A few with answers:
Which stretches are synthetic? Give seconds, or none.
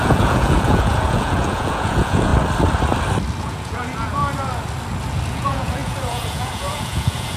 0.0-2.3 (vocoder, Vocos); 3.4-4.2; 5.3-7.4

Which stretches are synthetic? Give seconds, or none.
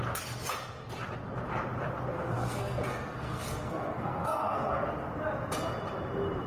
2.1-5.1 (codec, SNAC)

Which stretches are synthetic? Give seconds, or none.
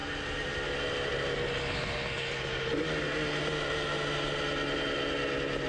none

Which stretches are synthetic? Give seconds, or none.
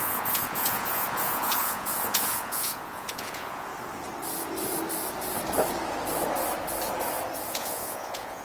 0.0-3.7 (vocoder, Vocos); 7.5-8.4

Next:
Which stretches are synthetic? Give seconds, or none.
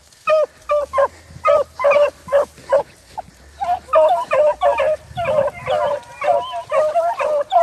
none